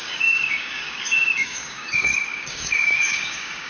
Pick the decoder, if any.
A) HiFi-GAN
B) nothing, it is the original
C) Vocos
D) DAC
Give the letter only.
D